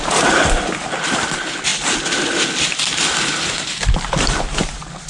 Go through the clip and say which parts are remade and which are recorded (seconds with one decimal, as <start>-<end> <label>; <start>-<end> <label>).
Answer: 0.0-5.1 recorded